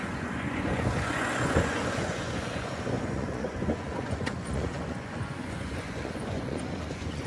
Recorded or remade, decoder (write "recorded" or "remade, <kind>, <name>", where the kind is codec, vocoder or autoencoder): remade, vocoder, Vocos